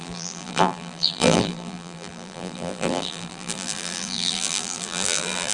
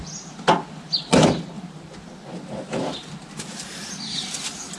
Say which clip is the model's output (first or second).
first